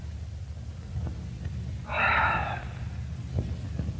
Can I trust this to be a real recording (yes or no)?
yes